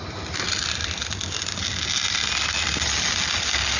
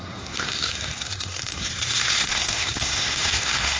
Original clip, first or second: first